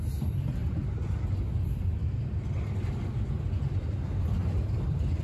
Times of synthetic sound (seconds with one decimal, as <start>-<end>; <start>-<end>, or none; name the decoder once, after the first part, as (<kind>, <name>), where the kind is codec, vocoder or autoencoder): 4.4-5.2 (vocoder, BigVGAN v2)